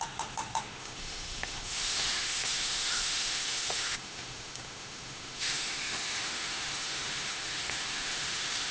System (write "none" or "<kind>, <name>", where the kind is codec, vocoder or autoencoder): autoencoder, DAC-VAE